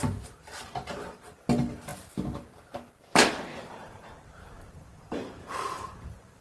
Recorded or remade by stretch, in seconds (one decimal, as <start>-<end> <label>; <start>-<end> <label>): 0.0-1.2 remade; 1.2-3.1 recorded; 3.1-6.4 remade